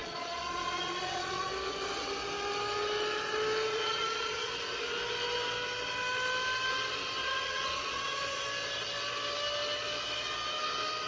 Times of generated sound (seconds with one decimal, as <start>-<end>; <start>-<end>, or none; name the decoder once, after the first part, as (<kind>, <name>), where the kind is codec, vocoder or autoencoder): 0.0-1.5 (vocoder, Vocos); 3.7-4.5; 7.2-8.4